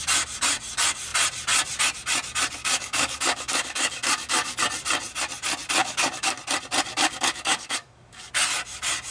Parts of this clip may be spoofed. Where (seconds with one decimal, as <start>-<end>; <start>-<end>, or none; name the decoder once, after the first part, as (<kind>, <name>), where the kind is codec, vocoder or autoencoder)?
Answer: 2.6-4.6 (codec, DAC); 5.8-6.3; 6.9-8.3